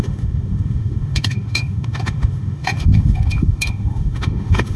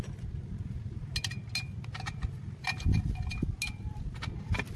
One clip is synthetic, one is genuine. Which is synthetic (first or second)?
first